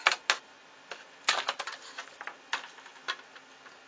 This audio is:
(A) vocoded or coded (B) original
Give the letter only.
B